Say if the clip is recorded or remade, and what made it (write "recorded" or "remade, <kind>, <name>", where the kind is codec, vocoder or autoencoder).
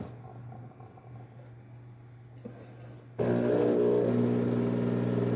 recorded